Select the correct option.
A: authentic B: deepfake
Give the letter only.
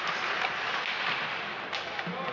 A